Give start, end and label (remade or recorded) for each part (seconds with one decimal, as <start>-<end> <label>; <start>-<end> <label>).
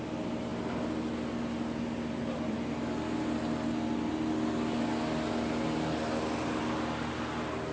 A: 0.0-7.7 recorded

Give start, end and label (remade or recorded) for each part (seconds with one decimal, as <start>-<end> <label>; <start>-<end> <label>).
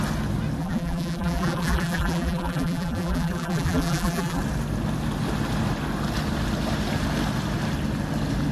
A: 0.0-0.6 recorded; 0.6-4.4 remade; 4.4-8.5 recorded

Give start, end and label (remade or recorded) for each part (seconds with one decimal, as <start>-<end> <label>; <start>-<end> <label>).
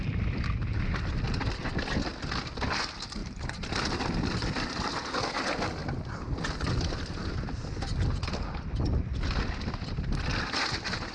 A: 0.0-3.2 recorded; 3.2-4.2 remade; 4.2-11.1 recorded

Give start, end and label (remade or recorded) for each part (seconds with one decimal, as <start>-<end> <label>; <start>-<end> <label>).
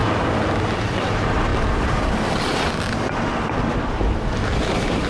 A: 0.0-1.1 recorded; 1.1-1.5 remade; 1.5-4.6 recorded; 4.6-5.1 remade